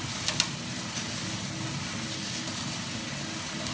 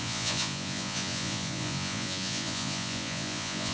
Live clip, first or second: first